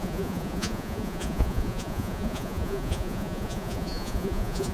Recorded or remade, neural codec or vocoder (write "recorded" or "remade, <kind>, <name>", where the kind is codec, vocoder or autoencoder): remade, vocoder, Vocos